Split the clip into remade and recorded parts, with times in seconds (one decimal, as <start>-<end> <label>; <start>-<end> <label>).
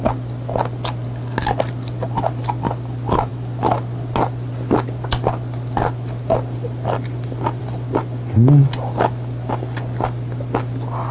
0.0-11.1 recorded